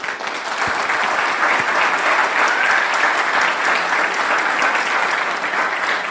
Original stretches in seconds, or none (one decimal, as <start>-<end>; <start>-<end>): 0.0-6.1